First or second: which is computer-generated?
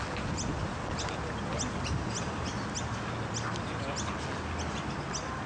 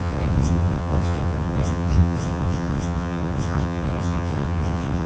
second